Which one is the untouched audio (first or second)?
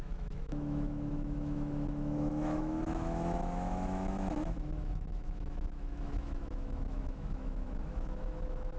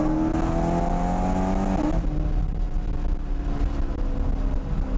second